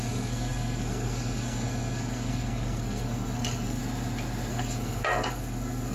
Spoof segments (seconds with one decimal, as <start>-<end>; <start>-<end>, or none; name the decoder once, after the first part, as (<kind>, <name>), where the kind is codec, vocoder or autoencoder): 0.0-3.8 (codec, SNAC); 4.5-5.9